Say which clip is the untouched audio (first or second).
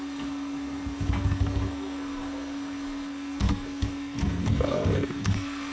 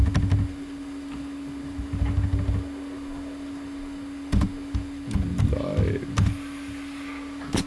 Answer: second